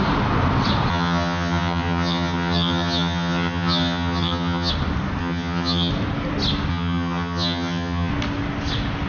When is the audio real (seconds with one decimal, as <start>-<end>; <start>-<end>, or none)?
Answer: 0.0-0.9; 4.7-5.2; 5.9-6.7; 8.1-9.1